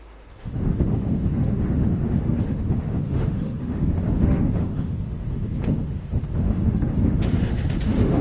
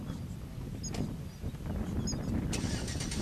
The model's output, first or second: first